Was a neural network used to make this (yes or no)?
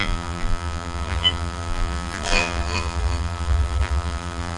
yes